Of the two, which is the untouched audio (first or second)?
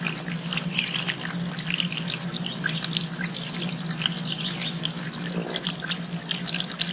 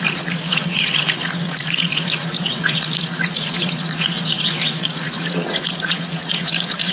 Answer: first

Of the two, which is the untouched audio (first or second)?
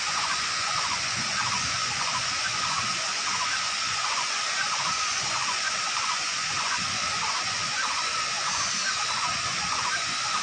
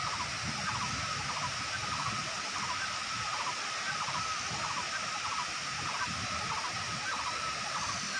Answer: second